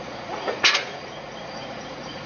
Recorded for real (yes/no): no